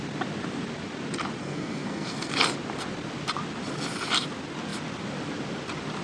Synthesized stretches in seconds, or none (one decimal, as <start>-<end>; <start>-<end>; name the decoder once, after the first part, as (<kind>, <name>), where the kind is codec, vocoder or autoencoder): 1.4-2.3 (codec, SNAC)